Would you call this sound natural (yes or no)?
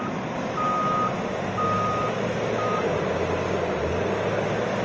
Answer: yes